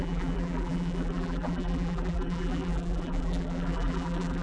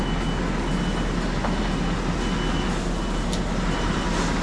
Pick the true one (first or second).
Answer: second